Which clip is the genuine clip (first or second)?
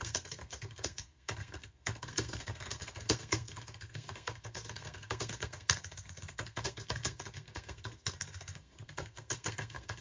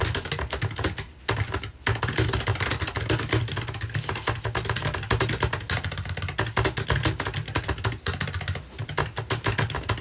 second